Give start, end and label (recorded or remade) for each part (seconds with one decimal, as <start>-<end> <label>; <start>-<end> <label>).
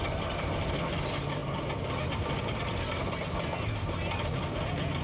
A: 0.0-5.0 recorded